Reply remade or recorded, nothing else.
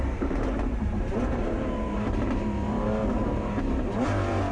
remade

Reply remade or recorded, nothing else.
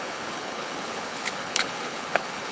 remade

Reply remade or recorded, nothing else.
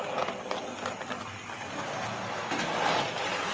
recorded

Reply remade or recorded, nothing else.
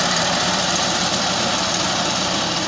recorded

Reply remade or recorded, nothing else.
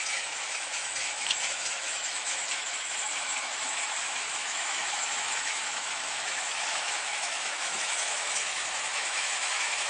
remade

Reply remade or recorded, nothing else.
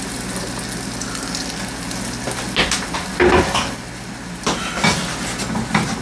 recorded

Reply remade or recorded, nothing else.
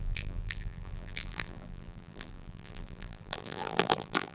remade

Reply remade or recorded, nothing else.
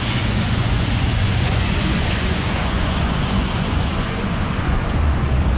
remade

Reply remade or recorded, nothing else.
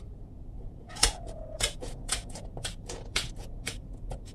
remade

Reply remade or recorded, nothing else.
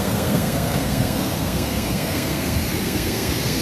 remade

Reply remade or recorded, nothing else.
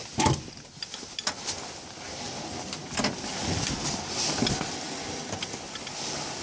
recorded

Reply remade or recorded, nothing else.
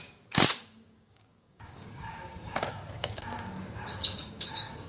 remade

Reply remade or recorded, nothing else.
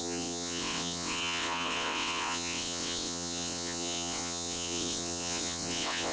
remade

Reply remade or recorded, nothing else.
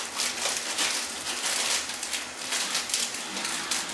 remade